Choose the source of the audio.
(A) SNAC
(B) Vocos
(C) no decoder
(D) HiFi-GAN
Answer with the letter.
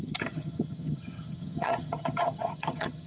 D